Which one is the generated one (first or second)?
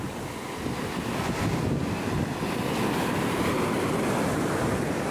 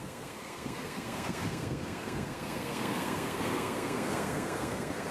second